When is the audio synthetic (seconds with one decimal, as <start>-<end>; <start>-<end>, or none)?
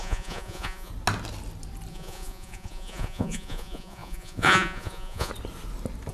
0.0-0.9; 1.9-5.3